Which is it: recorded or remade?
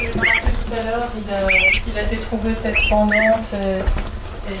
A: recorded